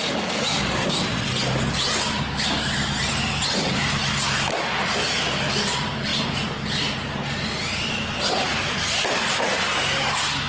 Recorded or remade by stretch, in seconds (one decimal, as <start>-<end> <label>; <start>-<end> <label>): 0.0-10.5 recorded